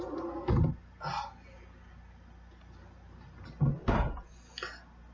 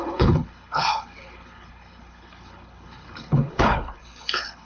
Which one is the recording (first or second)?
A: first